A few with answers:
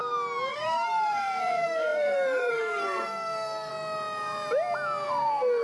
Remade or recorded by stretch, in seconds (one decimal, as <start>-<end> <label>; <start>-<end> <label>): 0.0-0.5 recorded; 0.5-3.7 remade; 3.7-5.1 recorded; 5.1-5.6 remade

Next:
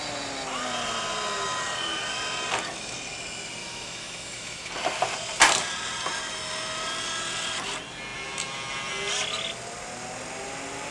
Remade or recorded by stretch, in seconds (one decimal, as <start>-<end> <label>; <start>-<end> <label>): 0.0-3.6 recorded; 3.6-4.7 remade; 4.7-10.9 recorded

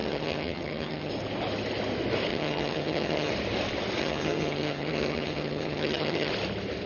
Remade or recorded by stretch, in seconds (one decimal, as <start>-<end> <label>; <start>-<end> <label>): 0.0-1.1 remade; 1.1-2.3 recorded; 2.3-3.3 remade; 3.3-4.0 recorded; 4.0-6.3 remade; 6.3-6.9 recorded